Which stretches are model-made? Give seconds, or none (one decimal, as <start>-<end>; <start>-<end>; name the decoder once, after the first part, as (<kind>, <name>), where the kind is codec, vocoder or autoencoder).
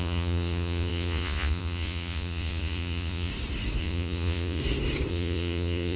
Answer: 0.0-3.3 (vocoder, Vocos); 3.8-4.6; 5.1-6.0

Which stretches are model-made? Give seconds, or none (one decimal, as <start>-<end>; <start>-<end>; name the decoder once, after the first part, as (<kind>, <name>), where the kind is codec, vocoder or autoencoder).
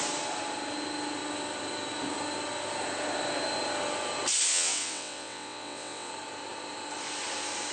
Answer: 4.5-6.1 (vocoder, WaveNeXt)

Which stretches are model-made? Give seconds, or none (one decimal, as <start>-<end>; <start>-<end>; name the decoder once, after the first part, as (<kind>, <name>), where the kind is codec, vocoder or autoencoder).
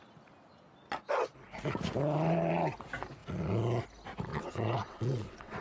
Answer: 4.3-5.6 (vocoder, WaveNeXt)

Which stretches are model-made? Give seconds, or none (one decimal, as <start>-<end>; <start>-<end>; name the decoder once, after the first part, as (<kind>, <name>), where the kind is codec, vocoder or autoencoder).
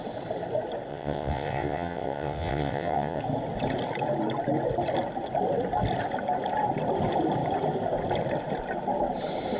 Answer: 0.9-3.2 (vocoder, WaveNeXt)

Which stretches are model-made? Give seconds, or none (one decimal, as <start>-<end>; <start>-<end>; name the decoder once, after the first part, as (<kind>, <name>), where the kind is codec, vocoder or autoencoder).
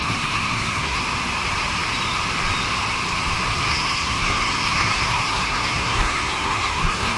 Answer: 0.0-1.0 (codec, SNAC); 3.7-7.2